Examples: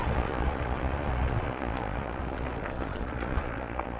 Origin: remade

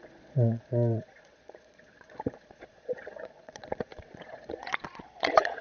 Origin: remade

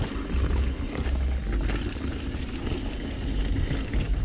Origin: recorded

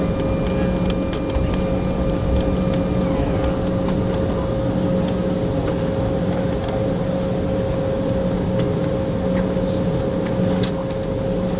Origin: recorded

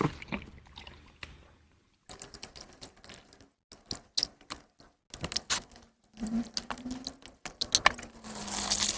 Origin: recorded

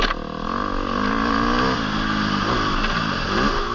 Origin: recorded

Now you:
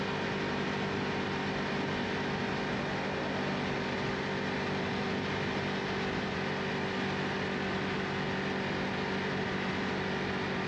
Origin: recorded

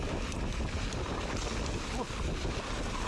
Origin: recorded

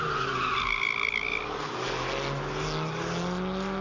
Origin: recorded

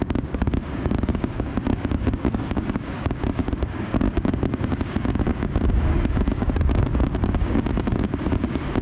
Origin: remade